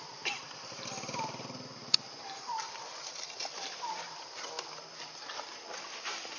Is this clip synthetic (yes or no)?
no